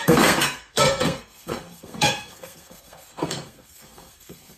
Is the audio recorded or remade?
remade